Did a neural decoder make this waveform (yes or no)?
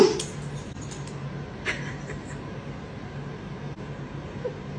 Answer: no